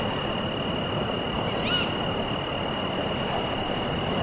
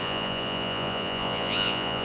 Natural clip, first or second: first